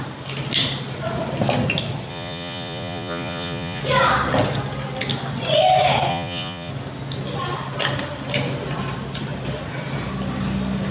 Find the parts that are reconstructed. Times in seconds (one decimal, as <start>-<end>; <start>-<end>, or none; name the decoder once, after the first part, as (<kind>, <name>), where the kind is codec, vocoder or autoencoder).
2.1-3.8 (vocoder, Vocos); 6.1-6.7